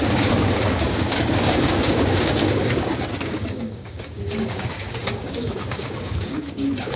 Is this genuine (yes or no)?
no